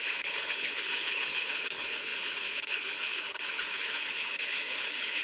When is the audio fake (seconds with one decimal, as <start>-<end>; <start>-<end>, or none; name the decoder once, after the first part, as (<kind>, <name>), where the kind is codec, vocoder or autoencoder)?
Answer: 0.0-5.2 (codec, HILCodec)